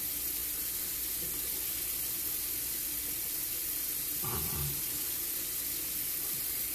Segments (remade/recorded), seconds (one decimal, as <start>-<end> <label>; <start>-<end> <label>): 0.0-6.7 recorded